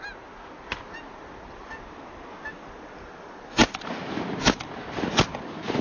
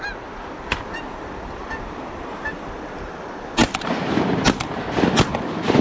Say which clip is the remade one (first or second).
second